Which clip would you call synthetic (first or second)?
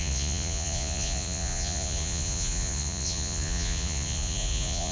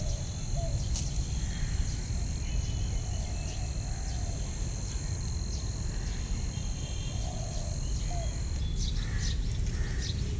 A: first